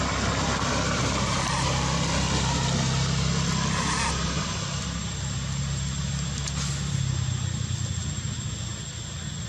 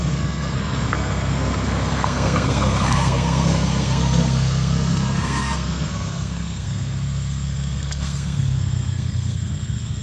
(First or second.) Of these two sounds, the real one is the first